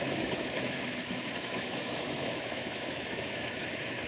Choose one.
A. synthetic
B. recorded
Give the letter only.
A